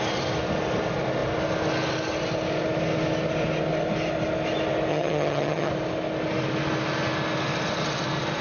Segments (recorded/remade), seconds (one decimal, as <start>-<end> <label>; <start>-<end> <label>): 0.0-4.9 recorded; 4.9-5.7 remade; 5.7-8.4 recorded